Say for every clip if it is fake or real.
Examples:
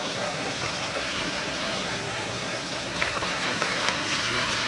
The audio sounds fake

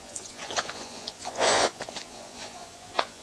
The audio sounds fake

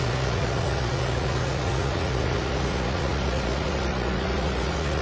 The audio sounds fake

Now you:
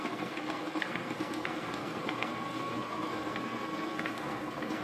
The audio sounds fake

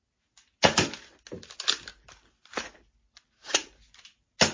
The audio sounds real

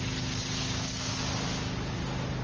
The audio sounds real